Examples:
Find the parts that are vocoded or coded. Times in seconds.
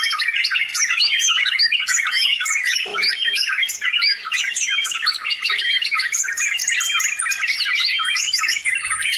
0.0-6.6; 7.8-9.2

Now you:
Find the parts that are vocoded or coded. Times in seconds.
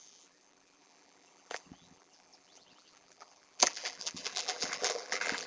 0.0-5.5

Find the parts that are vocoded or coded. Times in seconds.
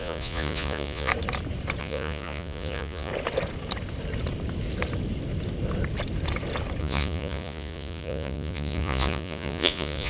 0.0-1.1; 1.8-3.1; 6.8-10.1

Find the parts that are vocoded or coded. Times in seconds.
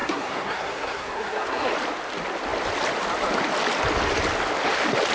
0.0-1.7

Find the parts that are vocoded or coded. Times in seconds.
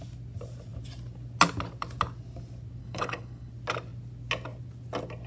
2.8-3.5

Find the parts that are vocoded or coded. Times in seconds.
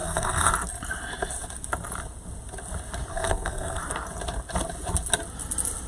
0.0-0.5; 3.1-3.8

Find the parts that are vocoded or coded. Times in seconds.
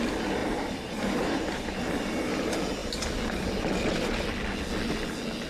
0.4-1.8